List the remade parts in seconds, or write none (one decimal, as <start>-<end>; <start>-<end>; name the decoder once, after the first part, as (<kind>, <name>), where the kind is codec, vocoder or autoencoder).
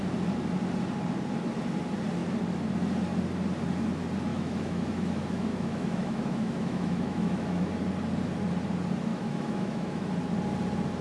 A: 4.3-7.8 (autoencoder, DAC-VAE); 9.1-10.1